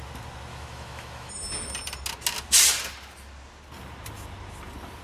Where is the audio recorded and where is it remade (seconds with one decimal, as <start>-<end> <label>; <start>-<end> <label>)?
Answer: 0.0-0.5 recorded; 0.5-1.3 remade; 1.3-5.0 recorded